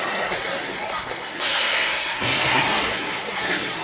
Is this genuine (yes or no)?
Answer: no